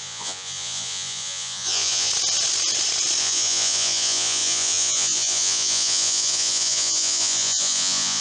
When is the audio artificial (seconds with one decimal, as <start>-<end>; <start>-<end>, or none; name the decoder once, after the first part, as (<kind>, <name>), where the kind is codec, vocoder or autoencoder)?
0.0-2.1 (vocoder, Vocos); 3.2-8.2